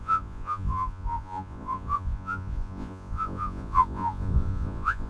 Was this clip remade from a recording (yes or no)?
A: yes